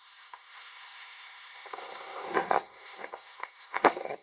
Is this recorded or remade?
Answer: remade